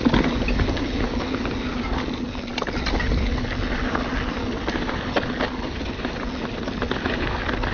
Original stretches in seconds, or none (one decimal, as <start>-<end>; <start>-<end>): 0.0-7.7